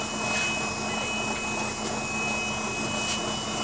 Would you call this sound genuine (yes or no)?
yes